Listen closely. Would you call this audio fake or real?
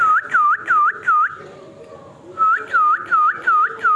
real